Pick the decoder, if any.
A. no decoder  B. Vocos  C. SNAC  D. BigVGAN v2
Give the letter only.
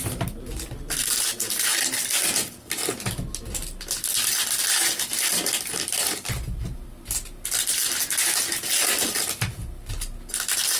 A